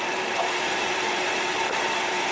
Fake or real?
fake